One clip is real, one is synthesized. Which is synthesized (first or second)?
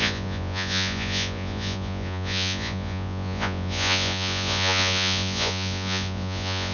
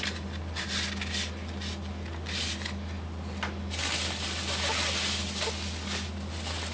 first